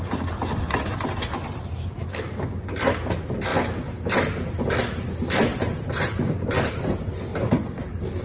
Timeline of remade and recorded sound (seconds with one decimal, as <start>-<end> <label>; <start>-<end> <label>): 0.0-5.5 recorded; 5.5-6.8 remade; 6.8-8.2 recorded